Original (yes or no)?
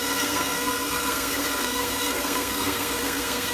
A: no